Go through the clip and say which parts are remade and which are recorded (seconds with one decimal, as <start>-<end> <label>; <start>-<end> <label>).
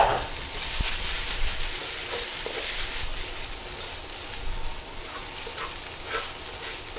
0.0-7.0 recorded